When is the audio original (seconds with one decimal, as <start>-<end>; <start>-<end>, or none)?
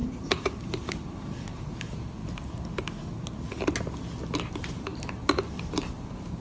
2.2-4.5